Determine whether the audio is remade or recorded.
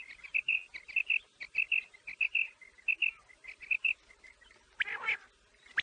recorded